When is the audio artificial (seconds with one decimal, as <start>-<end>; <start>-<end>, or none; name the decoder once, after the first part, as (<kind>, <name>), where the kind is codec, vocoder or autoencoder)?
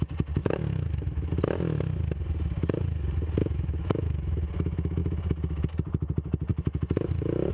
0.4-1.3 (autoencoder, DAC-VAE); 3.4-5.0